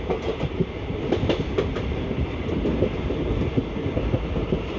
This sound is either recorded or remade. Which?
recorded